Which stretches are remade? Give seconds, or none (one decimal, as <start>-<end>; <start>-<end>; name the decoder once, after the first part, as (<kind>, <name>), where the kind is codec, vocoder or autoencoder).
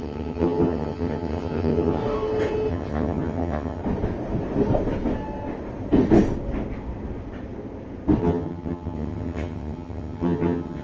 0.0-2.0 (vocoder, HiFi-GAN); 2.7-3.8; 8.2-10.8